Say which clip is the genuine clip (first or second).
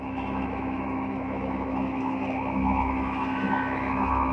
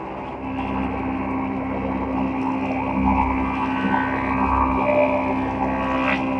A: second